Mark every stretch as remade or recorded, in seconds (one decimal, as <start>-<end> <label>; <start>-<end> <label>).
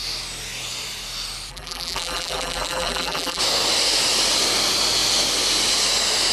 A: 0.0-1.5 recorded; 1.5-3.4 remade; 3.4-6.3 recorded